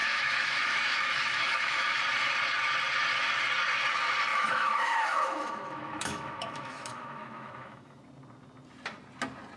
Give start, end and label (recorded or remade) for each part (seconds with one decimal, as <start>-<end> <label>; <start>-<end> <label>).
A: 0.0-2.0 remade; 2.0-4.3 recorded; 4.3-8.0 remade; 8.0-9.6 recorded